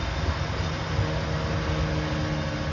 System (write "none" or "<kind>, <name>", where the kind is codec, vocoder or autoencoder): none